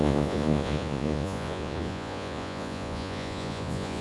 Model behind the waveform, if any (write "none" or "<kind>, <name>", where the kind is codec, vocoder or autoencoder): vocoder, Vocos